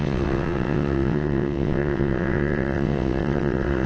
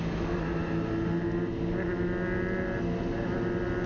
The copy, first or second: first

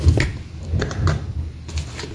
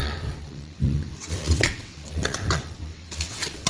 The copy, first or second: second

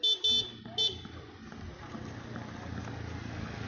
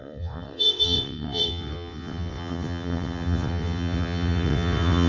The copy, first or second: second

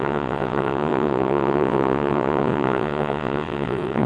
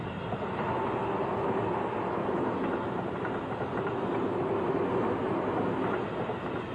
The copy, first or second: first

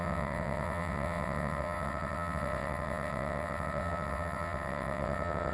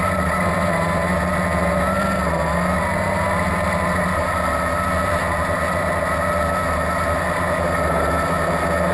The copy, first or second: first